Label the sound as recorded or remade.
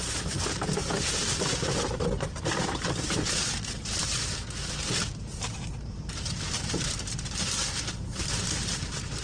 remade